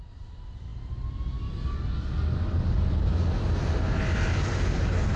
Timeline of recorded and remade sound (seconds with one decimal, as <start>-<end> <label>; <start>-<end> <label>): 0.0-5.2 recorded